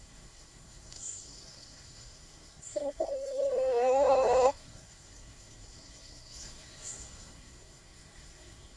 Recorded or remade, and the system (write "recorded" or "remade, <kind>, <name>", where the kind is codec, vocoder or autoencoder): remade, codec, SNAC